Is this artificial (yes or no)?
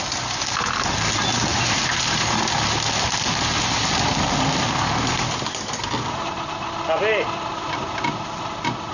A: no